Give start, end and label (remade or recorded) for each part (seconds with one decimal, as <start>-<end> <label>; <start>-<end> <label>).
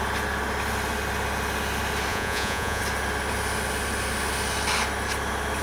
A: 0.0-2.1 recorded; 2.1-2.8 remade; 2.8-5.6 recorded